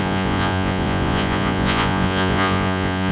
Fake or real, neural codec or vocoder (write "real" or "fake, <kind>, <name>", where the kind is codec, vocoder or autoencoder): fake, vocoder, Vocos